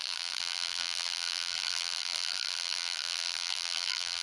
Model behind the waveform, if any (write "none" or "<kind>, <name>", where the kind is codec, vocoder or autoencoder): vocoder, BigVGAN v2